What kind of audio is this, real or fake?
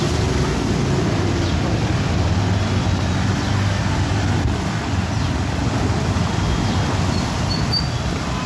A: real